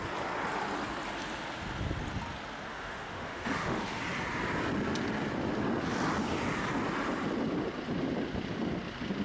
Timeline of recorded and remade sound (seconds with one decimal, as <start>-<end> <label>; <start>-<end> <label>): 0.0-2.7 recorded; 2.7-4.0 remade; 4.0-9.2 recorded